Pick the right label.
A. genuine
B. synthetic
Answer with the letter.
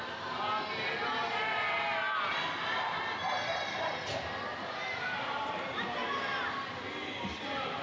A